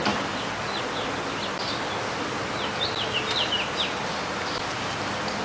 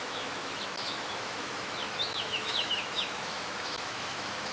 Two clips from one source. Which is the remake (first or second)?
second